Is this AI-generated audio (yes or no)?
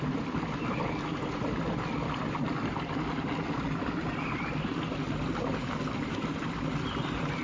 no